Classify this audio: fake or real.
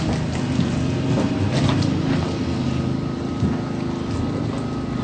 real